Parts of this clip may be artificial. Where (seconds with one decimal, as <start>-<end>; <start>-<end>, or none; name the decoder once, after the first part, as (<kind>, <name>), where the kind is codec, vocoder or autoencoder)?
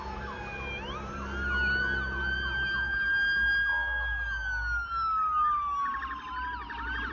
none